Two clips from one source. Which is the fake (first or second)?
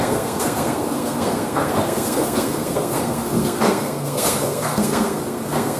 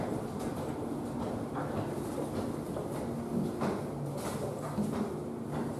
first